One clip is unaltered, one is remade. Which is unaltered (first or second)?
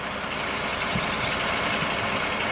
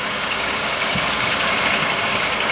first